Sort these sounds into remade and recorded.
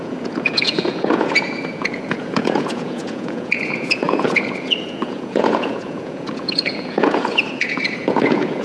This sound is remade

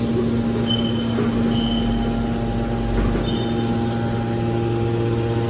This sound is recorded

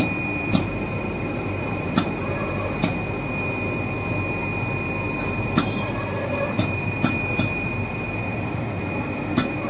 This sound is recorded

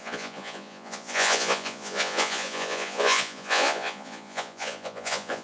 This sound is remade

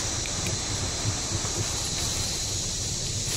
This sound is recorded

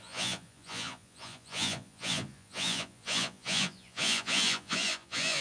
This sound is remade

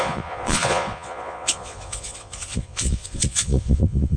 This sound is remade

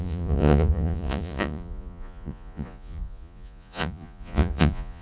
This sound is remade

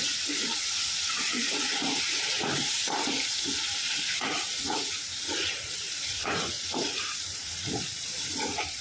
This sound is remade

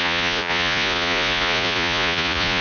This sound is remade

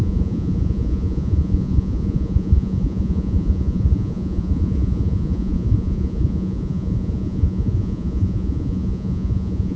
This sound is remade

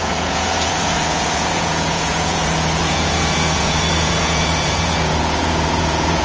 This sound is remade